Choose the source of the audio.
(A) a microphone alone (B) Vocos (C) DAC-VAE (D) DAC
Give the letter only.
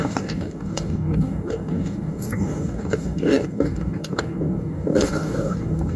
D